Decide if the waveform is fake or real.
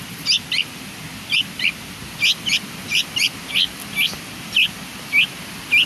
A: real